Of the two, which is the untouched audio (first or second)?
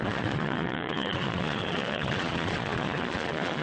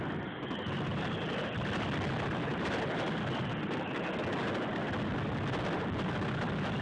second